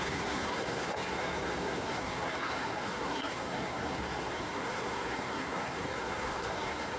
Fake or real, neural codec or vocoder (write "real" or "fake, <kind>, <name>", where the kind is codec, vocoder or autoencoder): fake, codec, SNAC